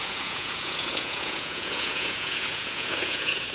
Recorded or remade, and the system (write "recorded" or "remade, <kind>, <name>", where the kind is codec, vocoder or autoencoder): remade, vocoder, Vocos